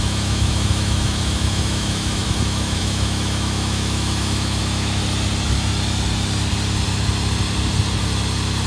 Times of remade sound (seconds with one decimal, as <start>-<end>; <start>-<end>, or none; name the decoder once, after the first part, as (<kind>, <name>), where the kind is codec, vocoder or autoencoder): 0.0-5.0 (autoencoder, DAC-VAE)